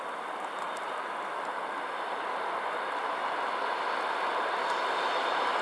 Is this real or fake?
real